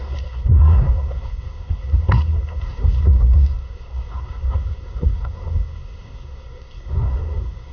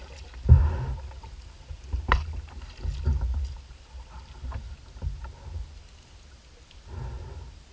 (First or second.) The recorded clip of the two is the second